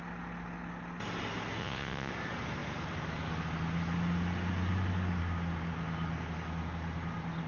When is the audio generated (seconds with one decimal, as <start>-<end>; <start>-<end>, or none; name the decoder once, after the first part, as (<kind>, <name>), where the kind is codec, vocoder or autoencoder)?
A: 1.6-2.1 (vocoder, Vocos)